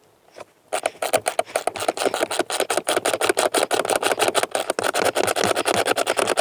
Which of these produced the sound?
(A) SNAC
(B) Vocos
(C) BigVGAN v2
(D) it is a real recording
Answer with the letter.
D